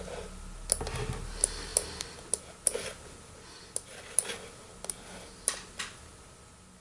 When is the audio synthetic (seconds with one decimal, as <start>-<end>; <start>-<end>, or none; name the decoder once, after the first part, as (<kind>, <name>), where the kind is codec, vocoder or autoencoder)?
none